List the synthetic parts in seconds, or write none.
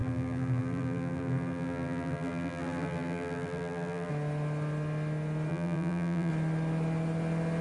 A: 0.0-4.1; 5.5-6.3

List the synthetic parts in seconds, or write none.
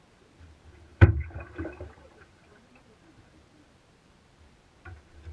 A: 0.9-2.7